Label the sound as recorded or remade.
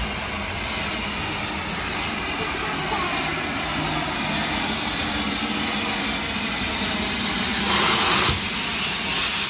recorded